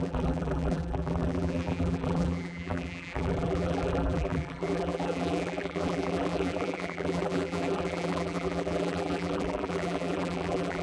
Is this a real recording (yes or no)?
no